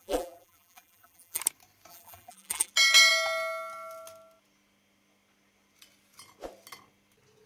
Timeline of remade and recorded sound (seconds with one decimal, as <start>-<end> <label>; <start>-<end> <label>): 0.0-1.4 remade; 1.4-1.9 recorded; 1.9-2.7 remade; 2.7-7.5 recorded